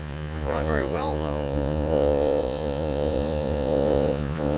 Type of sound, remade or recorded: remade